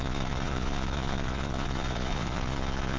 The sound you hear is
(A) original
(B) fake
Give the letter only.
B